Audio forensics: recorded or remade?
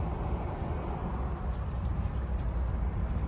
recorded